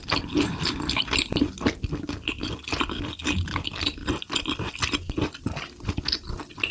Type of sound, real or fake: real